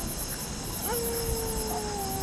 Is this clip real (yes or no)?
yes